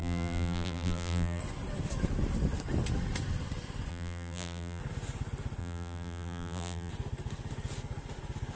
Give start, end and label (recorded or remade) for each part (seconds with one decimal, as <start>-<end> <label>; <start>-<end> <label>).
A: 0.0-1.4 remade; 1.4-3.9 recorded; 3.9-4.8 remade; 4.8-5.6 recorded; 5.6-6.9 remade; 6.9-8.6 recorded